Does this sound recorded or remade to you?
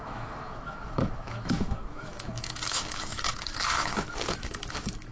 remade